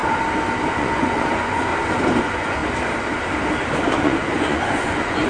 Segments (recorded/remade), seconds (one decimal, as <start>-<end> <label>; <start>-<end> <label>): 0.0-0.7 recorded; 0.7-1.7 remade; 1.7-2.2 recorded; 2.2-2.6 remade; 2.6-3.9 recorded; 3.9-5.3 remade